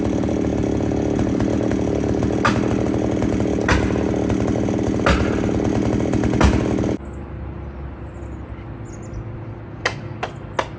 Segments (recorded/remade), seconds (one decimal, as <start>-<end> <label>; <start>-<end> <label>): 0.0-10.8 recorded